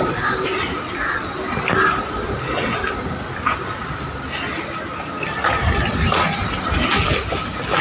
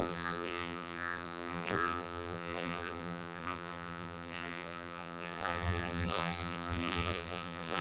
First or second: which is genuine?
first